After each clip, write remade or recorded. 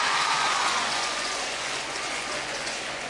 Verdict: remade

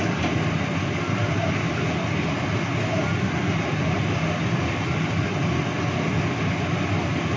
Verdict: recorded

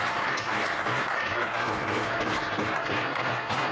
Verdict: remade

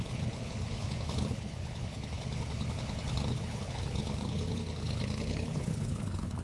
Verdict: remade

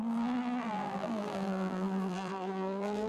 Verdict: remade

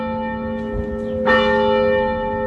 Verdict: recorded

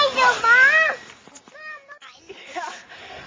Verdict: recorded